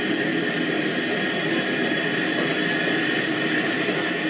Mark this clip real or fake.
real